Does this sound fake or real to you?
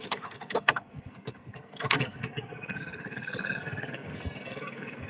fake